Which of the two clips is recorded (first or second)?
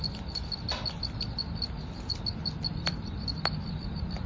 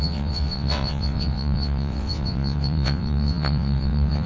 first